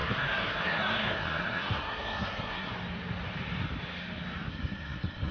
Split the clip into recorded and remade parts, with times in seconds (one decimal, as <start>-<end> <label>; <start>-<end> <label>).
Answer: 0.0-2.7 remade; 2.7-4.5 recorded; 4.5-5.3 remade